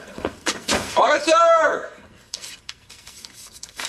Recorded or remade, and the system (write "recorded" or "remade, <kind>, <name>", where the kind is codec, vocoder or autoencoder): remade, codec, SNAC